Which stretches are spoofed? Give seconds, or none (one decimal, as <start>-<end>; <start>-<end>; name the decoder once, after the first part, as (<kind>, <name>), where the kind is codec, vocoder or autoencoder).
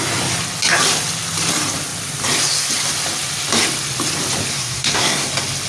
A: 4.5-5.3 (codec, SNAC)